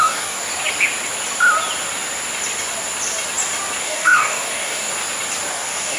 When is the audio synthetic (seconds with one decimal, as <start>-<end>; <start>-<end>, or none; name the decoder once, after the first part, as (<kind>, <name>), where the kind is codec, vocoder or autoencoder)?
0.0-0.5 (codec, DAC); 3.8-4.9; 5.5-6.0